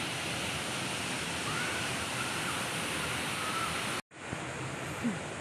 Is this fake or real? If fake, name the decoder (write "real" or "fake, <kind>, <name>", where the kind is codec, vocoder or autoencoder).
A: real